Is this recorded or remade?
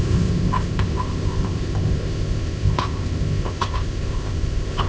remade